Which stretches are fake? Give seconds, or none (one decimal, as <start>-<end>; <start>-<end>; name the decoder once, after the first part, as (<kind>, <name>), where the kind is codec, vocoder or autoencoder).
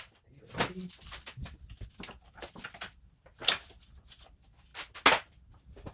none